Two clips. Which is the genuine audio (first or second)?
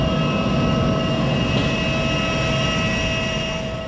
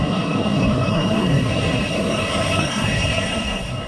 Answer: first